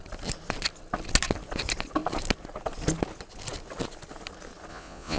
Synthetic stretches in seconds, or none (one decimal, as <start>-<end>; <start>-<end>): 4.7-5.2